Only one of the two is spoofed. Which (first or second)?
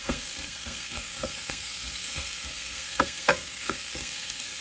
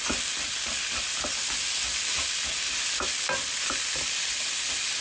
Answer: first